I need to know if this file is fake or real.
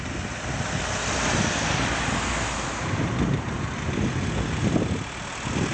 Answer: real